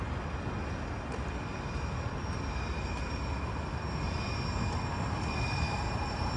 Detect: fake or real real